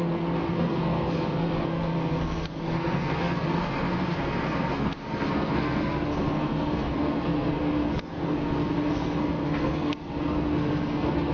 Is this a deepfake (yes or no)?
yes